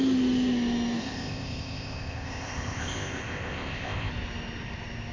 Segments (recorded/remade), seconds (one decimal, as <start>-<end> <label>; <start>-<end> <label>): 0.0-1.0 recorded; 1.0-4.1 remade; 4.1-5.1 recorded